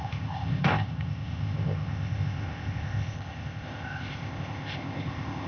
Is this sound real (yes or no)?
no